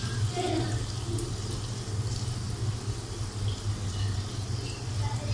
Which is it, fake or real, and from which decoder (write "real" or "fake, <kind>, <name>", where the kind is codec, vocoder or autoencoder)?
real